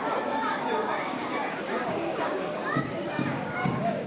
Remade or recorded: remade